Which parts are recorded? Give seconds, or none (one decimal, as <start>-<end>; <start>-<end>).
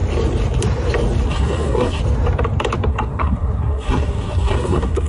0.0-1.3; 2.0-2.9